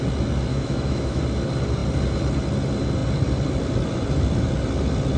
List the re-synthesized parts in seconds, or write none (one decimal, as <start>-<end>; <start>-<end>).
0.5-1.2